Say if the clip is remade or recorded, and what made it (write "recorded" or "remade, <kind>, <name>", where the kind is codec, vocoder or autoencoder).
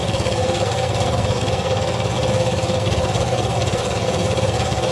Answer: remade, codec, SNAC